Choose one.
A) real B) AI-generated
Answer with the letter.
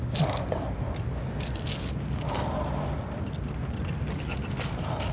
A